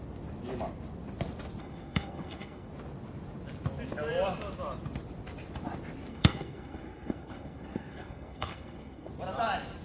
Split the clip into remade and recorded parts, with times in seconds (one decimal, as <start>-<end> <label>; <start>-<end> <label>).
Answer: 0.0-1.6 recorded; 1.6-2.7 remade; 2.7-6.1 recorded; 6.1-9.1 remade; 9.1-9.8 recorded